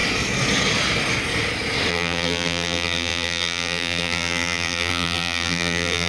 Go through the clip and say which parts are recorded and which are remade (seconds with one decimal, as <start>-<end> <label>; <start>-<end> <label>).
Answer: 0.0-1.9 recorded; 1.9-6.1 remade